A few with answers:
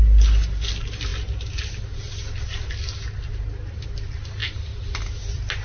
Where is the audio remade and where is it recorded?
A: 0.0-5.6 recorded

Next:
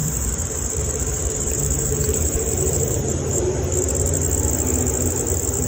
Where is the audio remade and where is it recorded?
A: 0.0-3.4 remade; 3.4-5.7 recorded

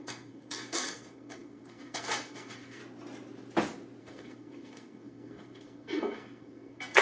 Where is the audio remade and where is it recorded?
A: 0.0-2.8 remade; 2.8-4.0 recorded; 4.0-7.0 remade

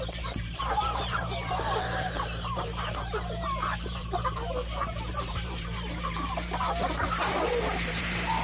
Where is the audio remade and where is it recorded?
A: 0.0-4.4 remade; 4.4-5.1 recorded; 5.1-8.4 remade

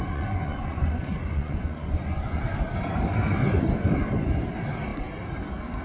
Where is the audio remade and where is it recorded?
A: 0.0-2.4 remade; 2.4-5.8 recorded

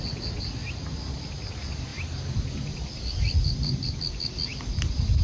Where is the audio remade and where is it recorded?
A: 0.0-5.2 recorded

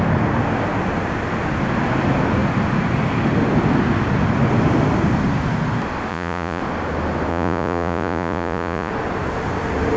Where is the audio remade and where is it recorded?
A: 0.0-6.1 recorded; 6.1-6.6 remade; 6.6-7.3 recorded; 7.3-8.9 remade; 8.9-10.0 recorded